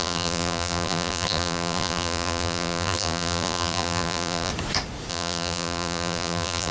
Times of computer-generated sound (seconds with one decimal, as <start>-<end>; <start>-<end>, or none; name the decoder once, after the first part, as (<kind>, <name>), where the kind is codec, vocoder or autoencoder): 0.0-4.5 (vocoder, BigVGAN v2); 5.1-6.7